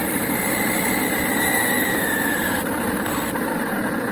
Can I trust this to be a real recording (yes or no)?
yes